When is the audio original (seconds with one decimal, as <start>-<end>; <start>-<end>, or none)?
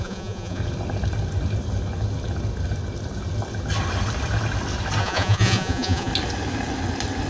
0.6-5.0; 6.1-7.3